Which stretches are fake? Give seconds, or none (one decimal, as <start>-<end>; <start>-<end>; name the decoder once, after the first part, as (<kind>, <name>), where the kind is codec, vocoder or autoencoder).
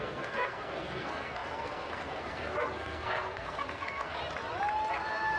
0.0-4.2 (codec, SNAC); 4.9-5.4